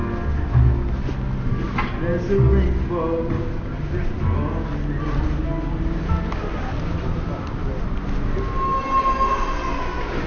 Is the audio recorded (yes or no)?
yes